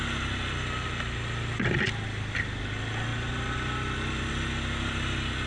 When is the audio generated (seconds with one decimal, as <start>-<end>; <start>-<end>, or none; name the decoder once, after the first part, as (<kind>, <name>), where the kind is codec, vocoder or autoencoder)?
none